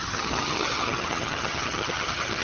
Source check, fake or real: fake